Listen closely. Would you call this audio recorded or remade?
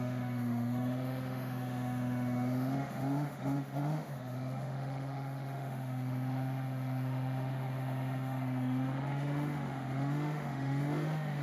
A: remade